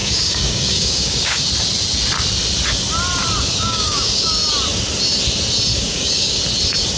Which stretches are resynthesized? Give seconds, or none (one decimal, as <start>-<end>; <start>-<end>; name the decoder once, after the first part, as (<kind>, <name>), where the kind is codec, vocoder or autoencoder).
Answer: 0.0-1.4 (codec, DAC); 3.5-4.3; 5.7-6.4